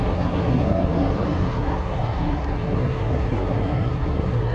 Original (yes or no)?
no